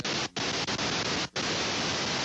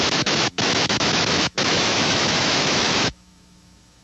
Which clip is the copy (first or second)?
second